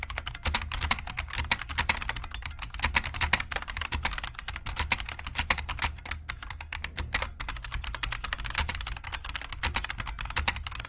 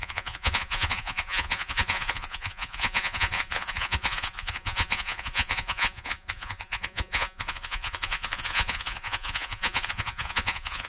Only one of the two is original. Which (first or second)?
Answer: first